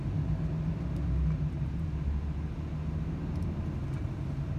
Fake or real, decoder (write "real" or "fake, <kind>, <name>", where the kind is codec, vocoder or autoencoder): real